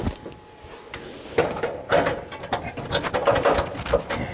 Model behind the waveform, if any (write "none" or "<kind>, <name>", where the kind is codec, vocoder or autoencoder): none